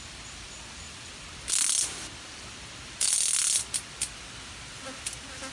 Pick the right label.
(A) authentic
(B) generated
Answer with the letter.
A